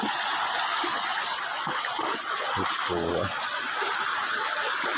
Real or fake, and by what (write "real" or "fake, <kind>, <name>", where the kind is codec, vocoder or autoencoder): real